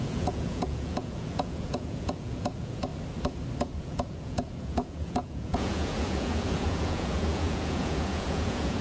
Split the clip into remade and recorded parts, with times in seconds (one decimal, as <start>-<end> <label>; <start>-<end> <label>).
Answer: 0.0-2.9 remade; 2.9-3.6 recorded; 3.6-8.8 remade